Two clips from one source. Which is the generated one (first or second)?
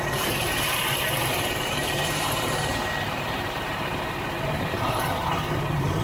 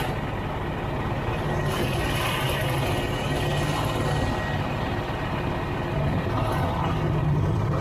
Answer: first